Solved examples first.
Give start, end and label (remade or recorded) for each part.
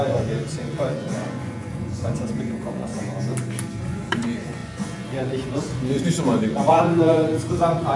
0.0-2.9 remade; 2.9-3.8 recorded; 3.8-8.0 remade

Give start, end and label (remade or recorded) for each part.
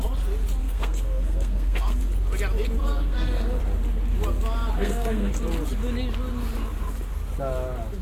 0.0-0.6 recorded; 0.6-2.0 remade; 2.0-2.8 recorded; 2.8-3.6 remade; 3.6-4.8 recorded; 4.8-5.3 remade; 5.3-8.0 recorded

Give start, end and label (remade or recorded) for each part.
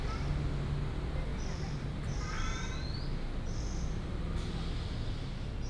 0.0-1.3 recorded; 1.3-2.4 remade; 2.4-5.7 recorded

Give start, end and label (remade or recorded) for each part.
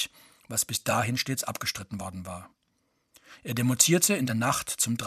0.0-0.8 recorded; 0.8-2.0 remade; 2.0-2.5 recorded; 2.5-4.3 remade; 4.3-5.1 recorded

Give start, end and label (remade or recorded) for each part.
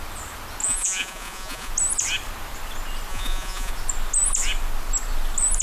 0.0-0.6 recorded; 0.6-1.7 remade; 1.7-3.1 recorded; 3.1-3.7 remade; 3.7-5.6 recorded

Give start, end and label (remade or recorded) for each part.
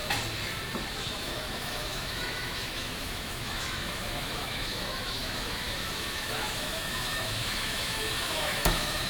0.0-0.9 recorded; 0.9-9.1 remade